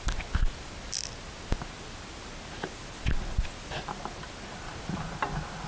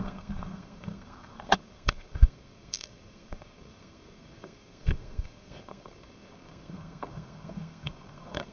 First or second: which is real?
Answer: first